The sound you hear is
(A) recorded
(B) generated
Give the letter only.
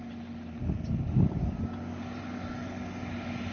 A